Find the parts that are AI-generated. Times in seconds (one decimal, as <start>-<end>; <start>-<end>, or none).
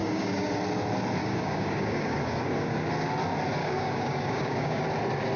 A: 0.0-0.5; 1.2-2.9; 3.6-4.8